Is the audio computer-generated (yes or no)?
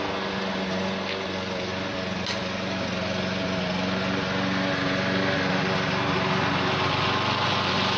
no